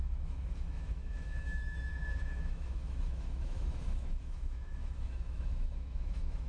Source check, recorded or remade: remade